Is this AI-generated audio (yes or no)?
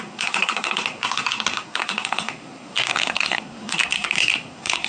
yes